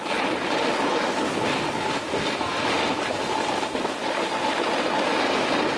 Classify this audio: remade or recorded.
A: recorded